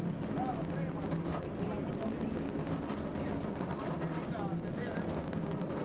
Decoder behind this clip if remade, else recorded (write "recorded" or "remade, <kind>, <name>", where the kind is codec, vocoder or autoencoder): recorded